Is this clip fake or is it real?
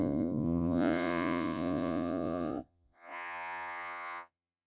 fake